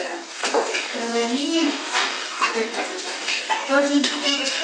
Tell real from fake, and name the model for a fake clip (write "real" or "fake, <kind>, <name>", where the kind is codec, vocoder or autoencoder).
fake, codec, DAC